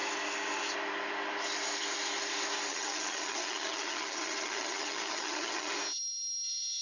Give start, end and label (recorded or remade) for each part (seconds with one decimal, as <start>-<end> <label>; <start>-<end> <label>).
0.0-2.7 recorded; 2.7-5.7 remade; 5.7-6.8 recorded